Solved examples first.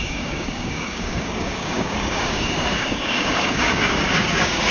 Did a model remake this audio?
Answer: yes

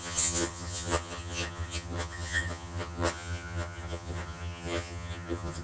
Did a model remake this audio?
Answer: yes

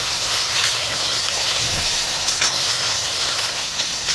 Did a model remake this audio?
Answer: yes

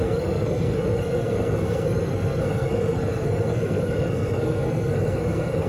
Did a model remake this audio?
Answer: yes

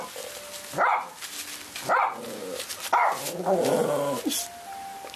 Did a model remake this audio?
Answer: no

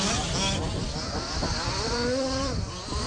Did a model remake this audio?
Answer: no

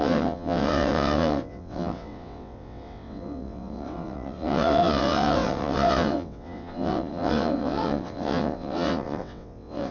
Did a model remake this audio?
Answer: yes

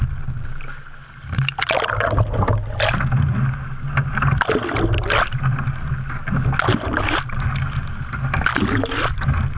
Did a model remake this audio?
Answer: no